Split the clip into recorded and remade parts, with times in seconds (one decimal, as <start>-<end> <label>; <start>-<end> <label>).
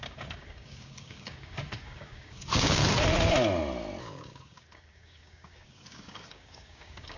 0.0-2.8 remade; 2.8-4.0 recorded; 4.0-7.2 remade